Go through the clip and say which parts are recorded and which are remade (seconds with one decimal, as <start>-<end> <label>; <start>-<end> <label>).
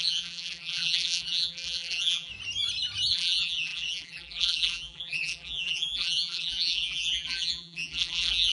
0.0-2.3 remade; 2.3-3.1 recorded; 3.1-8.5 remade